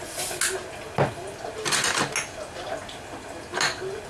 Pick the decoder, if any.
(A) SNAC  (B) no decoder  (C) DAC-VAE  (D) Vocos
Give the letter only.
B